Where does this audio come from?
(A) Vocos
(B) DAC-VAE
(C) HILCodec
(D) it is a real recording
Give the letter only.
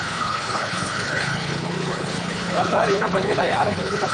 C